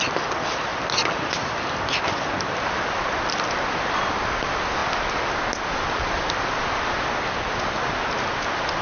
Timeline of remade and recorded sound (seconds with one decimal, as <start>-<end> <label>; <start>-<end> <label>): 0.0-8.8 recorded